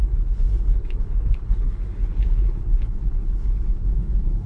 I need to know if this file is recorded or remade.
remade